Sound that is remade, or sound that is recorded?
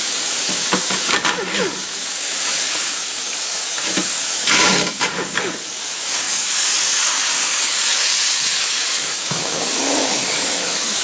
remade